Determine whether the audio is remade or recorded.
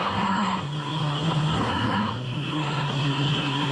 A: remade